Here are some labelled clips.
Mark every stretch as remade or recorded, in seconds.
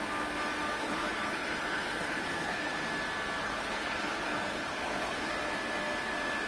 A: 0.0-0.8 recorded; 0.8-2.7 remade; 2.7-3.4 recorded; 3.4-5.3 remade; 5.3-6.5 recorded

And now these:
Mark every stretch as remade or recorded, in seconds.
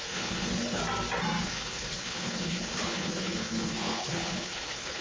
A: 0.0-0.8 remade; 0.8-1.4 recorded; 1.4-5.0 remade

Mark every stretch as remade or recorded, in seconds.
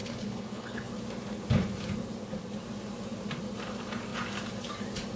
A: 0.0-0.9 remade; 0.9-5.2 recorded